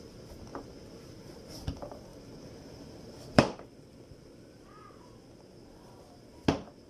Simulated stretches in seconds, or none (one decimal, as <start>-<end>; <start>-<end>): 2.1-4.6